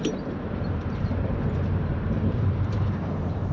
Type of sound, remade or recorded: remade